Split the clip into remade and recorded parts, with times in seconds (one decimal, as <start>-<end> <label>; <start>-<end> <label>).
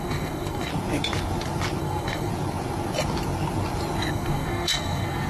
0.0-0.7 remade; 0.7-1.8 recorded; 1.8-2.3 remade; 2.3-4.1 recorded; 4.1-5.3 remade